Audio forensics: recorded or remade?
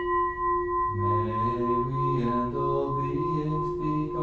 recorded